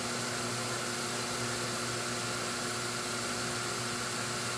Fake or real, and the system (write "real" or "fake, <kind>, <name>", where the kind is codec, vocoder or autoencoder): real